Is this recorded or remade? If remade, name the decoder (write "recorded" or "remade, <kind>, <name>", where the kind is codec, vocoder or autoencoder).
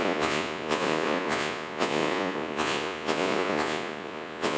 remade, vocoder, Vocos